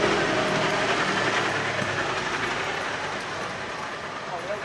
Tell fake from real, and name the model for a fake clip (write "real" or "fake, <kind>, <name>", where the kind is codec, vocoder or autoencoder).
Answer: real